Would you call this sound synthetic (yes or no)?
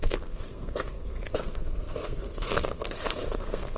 yes